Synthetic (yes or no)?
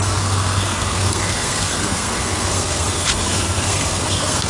yes